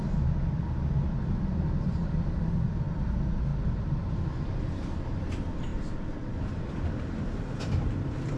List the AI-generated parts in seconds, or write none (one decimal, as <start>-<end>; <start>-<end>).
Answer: none